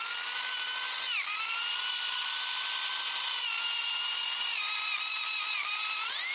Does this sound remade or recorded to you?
recorded